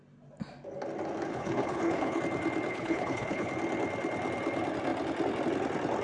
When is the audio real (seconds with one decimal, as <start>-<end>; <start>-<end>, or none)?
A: 0.0-1.3; 2.2-2.7; 3.5-6.0